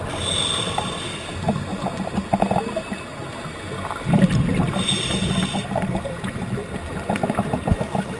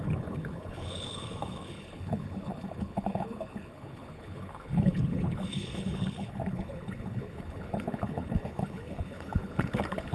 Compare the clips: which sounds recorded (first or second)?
first